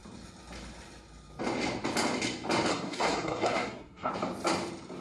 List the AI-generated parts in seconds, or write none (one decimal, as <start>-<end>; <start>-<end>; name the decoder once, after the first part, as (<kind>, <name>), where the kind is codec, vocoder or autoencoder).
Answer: 2.7-4.1 (codec, SNAC)